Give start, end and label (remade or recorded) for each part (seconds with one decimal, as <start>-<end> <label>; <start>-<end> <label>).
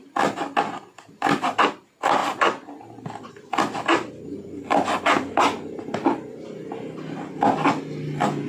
0.0-8.5 recorded